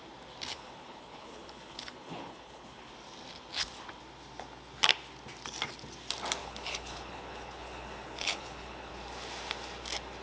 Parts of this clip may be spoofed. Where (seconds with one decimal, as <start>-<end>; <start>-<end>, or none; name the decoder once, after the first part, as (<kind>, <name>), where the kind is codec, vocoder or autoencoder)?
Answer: 0.5-2.9 (codec, HILCodec); 6.4-8.9